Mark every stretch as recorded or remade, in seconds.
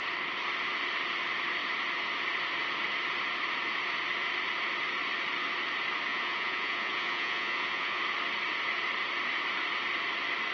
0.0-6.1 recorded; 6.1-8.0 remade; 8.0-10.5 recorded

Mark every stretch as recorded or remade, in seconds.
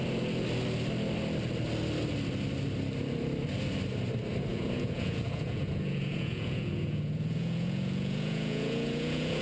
0.0-4.5 recorded; 4.5-9.4 remade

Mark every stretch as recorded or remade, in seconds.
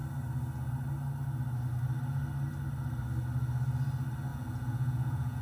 0.0-4.3 recorded; 4.3-5.4 remade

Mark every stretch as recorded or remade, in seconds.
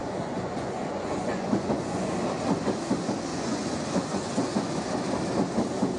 0.0-2.1 remade; 2.1-3.3 recorded; 3.3-4.9 remade; 4.9-6.0 recorded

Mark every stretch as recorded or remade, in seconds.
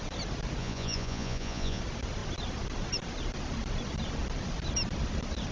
0.0-0.6 recorded; 0.6-1.8 remade; 1.8-5.5 recorded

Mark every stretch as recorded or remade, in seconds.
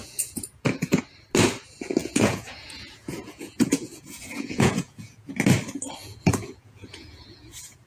0.0-1.0 remade; 1.0-2.0 recorded; 2.0-5.4 remade; 5.4-6.0 recorded; 6.0-7.9 remade